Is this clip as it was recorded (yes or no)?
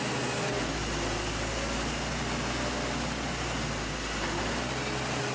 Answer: yes